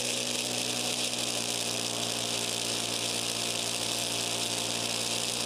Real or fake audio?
real